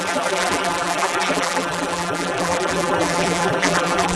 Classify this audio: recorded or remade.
remade